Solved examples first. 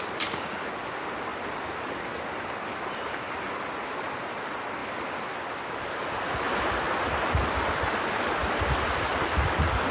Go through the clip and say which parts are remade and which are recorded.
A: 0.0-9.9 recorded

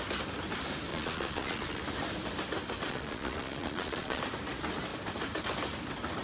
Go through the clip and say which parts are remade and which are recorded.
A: 0.0-0.9 recorded; 0.9-1.8 remade; 1.8-2.9 recorded; 2.9-4.2 remade; 4.2-6.2 recorded

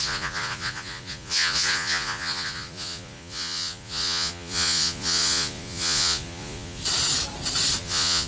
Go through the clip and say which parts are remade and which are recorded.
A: 0.0-6.8 remade; 6.8-7.8 recorded; 7.8-8.3 remade